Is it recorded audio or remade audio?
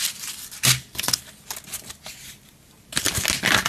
recorded